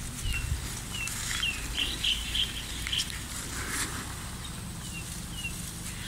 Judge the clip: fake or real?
real